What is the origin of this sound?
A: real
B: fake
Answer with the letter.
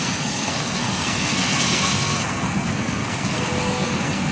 B